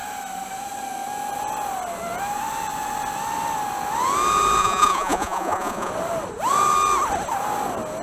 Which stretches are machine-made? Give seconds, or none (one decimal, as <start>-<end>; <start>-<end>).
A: 4.6-5.9